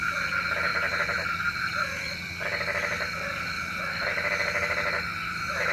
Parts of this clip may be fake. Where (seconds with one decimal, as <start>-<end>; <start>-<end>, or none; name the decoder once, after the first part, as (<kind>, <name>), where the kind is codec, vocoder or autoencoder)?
none